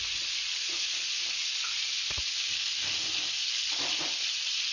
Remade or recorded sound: recorded